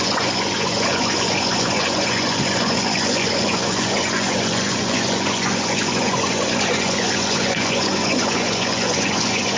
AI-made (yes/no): yes